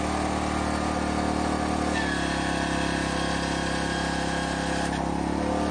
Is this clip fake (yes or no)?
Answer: no